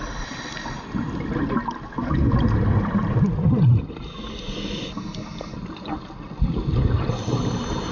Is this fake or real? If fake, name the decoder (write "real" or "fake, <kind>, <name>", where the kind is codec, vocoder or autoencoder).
real